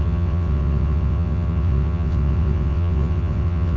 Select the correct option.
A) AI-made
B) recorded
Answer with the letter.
A